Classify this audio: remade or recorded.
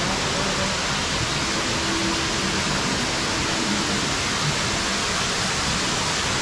recorded